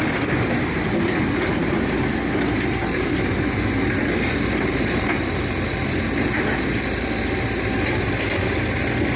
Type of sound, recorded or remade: recorded